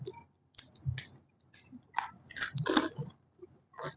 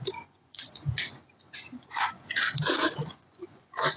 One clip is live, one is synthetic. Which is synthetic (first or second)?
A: second